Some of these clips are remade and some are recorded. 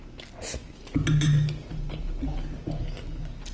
recorded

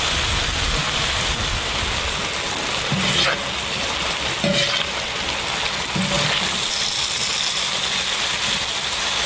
recorded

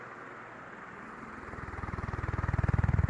recorded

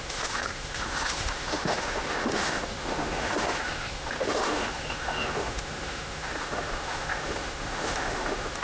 remade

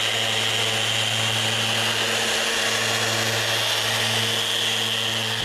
recorded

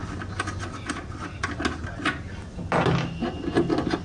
recorded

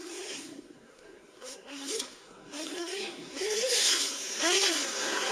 remade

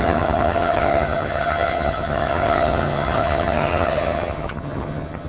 remade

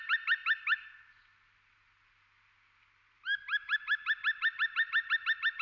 recorded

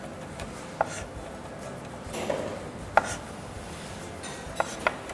recorded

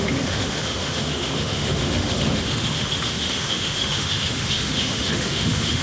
remade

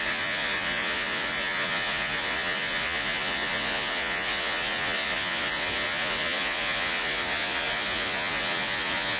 remade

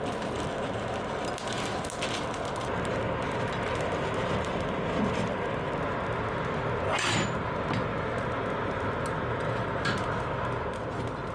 recorded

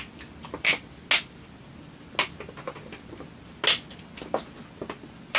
recorded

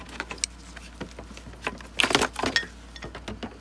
recorded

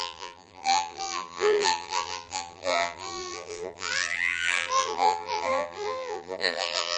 remade